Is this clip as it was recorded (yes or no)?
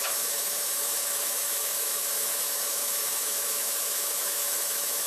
no